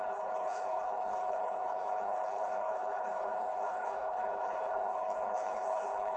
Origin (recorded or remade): remade